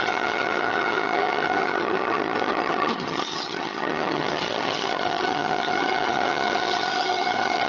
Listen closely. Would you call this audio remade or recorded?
remade